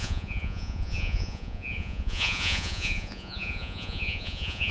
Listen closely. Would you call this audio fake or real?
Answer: fake